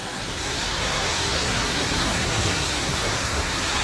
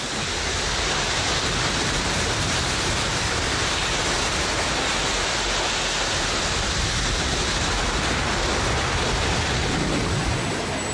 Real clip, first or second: second